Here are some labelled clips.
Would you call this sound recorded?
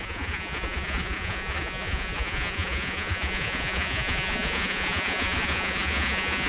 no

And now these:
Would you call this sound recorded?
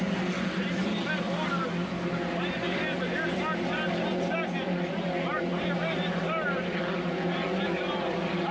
yes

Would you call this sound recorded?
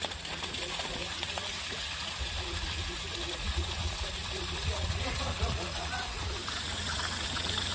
no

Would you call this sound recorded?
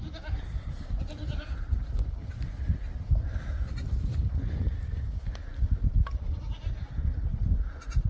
yes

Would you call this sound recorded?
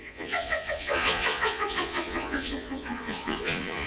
no